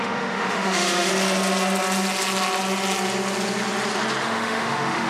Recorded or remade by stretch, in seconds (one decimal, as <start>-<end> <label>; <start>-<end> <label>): 0.0-1.1 remade; 1.1-4.2 recorded; 4.2-5.1 remade